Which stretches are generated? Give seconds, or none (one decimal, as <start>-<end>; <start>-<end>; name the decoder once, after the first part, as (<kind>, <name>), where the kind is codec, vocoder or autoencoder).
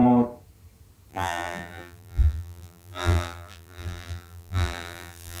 1.1-5.4 (vocoder, BigVGAN v2)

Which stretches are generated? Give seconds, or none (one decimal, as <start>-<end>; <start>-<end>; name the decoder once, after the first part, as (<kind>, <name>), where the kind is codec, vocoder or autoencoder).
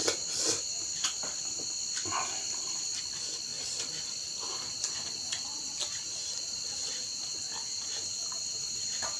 8.2-8.7 (vocoder, BigVGAN v2)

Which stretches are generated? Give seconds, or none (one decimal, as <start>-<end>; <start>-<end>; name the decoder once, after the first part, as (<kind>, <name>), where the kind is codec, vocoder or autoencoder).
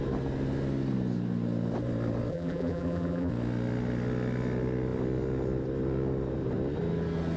2.3-3.3 (vocoder, BigVGAN v2)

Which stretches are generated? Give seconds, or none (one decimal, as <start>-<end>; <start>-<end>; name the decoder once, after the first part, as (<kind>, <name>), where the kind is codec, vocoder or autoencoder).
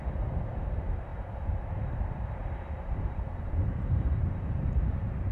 0.5-5.3 (vocoder, BigVGAN v2)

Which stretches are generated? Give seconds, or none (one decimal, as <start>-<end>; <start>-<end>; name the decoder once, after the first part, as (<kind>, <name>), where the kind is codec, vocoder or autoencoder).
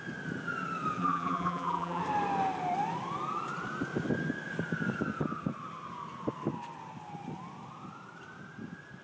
1.0-2.0 (vocoder, BigVGAN v2)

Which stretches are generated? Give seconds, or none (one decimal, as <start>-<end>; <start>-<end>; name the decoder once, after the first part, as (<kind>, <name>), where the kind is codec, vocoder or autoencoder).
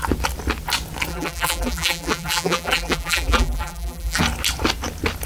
1.1-4.2 (vocoder, BigVGAN v2)